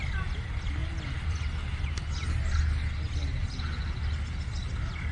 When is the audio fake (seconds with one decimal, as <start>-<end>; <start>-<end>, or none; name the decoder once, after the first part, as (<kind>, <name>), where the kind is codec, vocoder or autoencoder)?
none